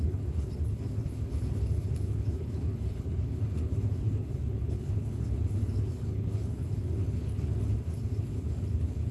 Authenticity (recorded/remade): remade